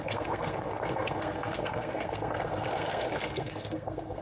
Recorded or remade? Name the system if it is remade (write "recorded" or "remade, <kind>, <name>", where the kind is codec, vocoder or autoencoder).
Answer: remade, codec, SNAC